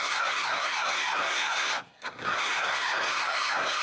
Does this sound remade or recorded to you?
remade